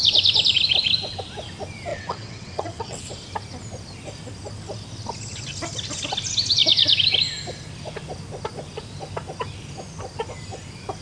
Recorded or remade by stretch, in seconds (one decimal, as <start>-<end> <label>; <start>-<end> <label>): 0.0-1.9 recorded; 1.9-3.1 remade; 3.1-11.0 recorded